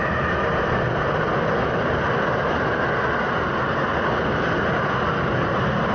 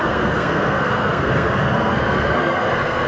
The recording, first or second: first